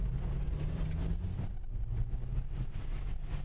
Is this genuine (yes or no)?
yes